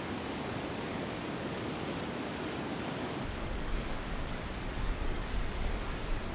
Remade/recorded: remade